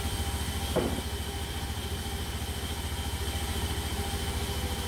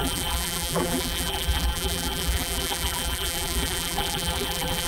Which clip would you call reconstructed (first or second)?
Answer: second